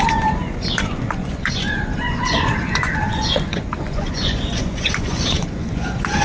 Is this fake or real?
fake